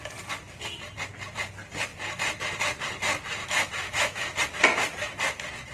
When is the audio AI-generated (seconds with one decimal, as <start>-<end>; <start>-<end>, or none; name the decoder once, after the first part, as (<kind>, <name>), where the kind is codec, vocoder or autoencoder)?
3.4-4.4 (autoencoder, DAC-VAE)